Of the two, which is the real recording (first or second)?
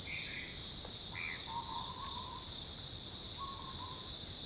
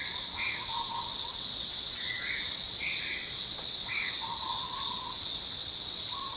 first